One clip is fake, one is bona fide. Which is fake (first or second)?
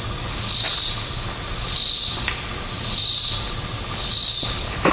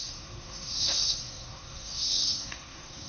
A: second